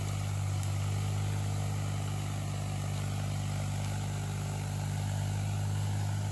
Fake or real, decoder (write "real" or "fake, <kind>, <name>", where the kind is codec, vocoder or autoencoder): real